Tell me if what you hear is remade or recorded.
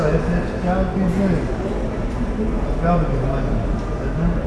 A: recorded